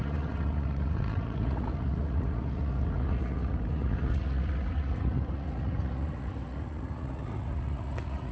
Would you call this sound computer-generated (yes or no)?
yes